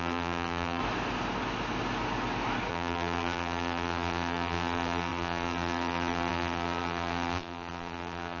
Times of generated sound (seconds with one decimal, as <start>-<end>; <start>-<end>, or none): 0.0-0.8; 2.7-8.4